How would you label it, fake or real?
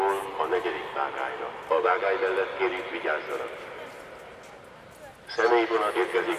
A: real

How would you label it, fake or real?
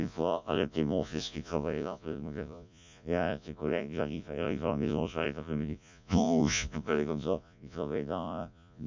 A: fake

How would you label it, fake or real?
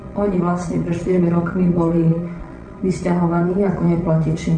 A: fake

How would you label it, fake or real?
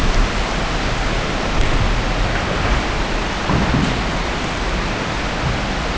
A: real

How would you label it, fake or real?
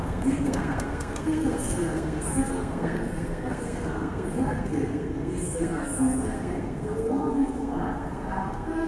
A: fake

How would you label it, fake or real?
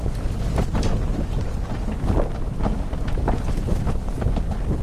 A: real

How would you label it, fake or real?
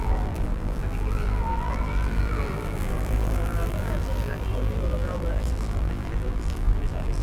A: fake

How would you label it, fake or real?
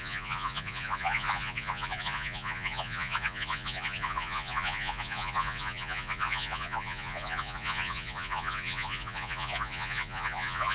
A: fake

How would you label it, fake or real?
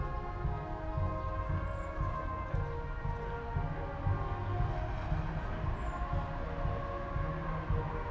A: real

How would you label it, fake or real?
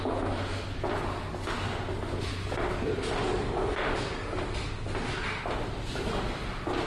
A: real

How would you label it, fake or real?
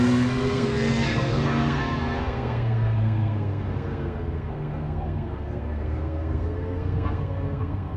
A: fake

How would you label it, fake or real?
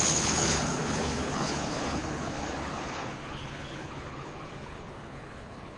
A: fake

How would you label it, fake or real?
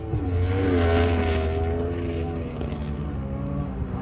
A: real